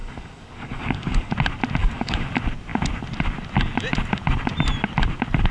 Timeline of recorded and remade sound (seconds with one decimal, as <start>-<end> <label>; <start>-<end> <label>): 0.0-1.3 remade; 1.3-1.8 recorded; 1.8-2.3 remade; 2.3-5.5 recorded